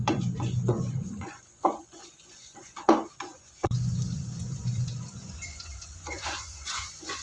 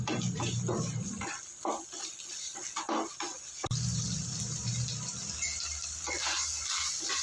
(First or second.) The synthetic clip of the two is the first